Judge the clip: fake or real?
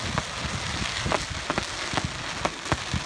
real